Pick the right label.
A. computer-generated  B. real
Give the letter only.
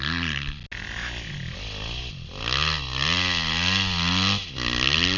B